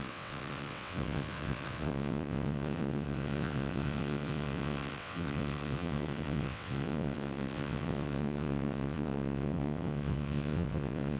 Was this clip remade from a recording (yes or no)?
yes